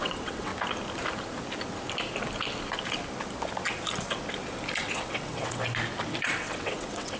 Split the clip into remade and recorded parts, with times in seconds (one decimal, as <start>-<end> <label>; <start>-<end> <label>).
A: 0.0-0.5 remade; 0.5-4.8 recorded; 4.8-5.6 remade; 5.6-6.2 recorded; 6.2-7.2 remade